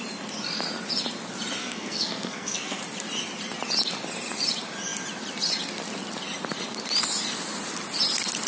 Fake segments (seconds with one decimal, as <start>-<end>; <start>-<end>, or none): 1.6-2.8